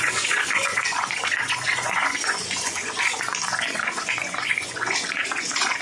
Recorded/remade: remade